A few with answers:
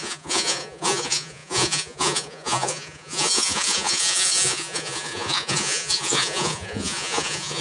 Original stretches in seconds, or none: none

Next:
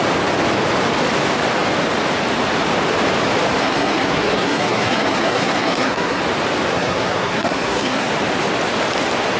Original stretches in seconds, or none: 0.0-3.6; 6.2-6.7; 8.1-9.4

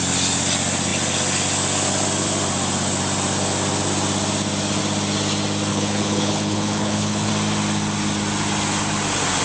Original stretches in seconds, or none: 0.0-5.7; 7.3-9.4

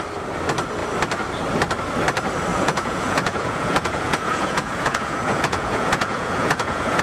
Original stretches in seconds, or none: 0.0-2.5